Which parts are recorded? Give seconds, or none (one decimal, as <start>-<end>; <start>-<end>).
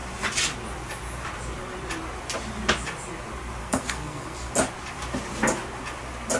0.0-3.6; 4.5-6.4